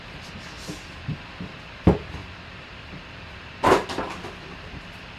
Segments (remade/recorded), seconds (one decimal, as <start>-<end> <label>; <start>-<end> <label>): 0.0-2.2 recorded; 2.2-3.2 remade; 3.2-5.2 recorded